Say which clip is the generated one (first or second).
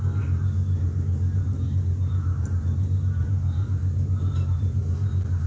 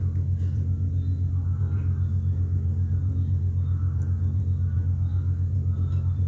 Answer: first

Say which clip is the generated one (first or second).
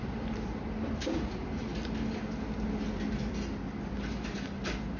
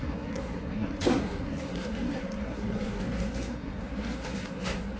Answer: second